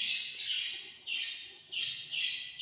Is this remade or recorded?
recorded